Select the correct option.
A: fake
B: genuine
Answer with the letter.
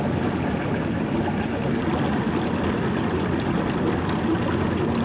B